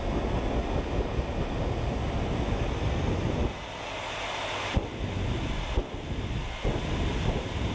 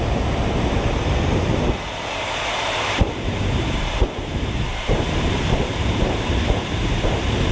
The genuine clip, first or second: first